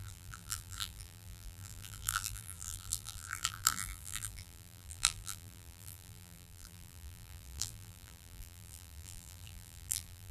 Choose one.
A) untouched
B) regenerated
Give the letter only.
B